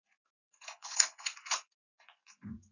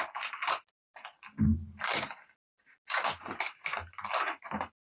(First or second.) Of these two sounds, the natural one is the second